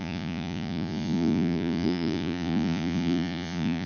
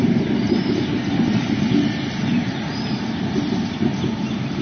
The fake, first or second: first